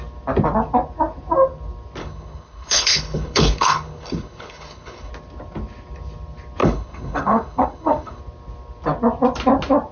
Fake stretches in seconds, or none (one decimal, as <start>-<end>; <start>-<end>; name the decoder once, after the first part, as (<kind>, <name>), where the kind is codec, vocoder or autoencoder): 2.0-5.1 (codec, HILCodec); 6.6-8.2